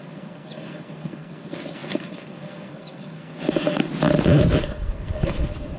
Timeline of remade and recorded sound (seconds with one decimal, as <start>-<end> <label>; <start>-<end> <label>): 0.0-3.8 remade; 3.8-4.6 recorded; 4.6-5.8 remade

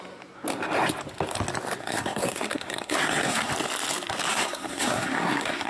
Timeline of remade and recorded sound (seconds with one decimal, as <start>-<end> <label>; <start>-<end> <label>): 0.0-1.8 recorded; 1.8-3.5 remade; 3.5-4.3 recorded; 4.3-5.7 remade

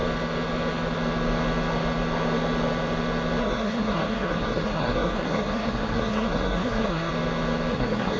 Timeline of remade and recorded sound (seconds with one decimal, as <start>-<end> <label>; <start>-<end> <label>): 0.0-3.4 recorded; 3.4-7.1 remade; 7.1-7.7 recorded; 7.7-8.2 remade

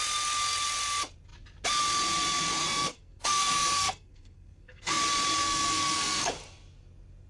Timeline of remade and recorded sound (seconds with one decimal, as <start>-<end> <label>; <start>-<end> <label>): 0.0-2.6 recorded; 2.6-5.0 remade; 5.0-5.4 recorded; 5.4-6.3 remade; 6.3-7.3 recorded

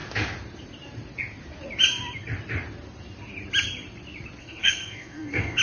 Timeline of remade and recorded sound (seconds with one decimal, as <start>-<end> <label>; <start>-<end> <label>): 0.0-4.4 recorded; 4.4-5.6 remade

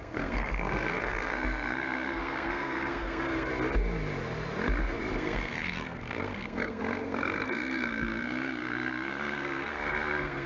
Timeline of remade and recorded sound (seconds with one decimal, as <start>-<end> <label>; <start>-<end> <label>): 0.0-3.5 remade; 3.5-5.0 recorded; 5.0-10.5 remade

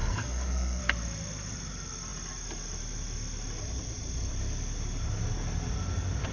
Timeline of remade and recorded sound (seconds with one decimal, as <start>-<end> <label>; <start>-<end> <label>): 0.0-0.8 remade; 0.8-6.3 recorded